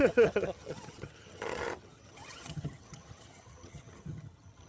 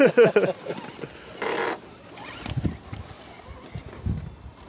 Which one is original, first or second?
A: second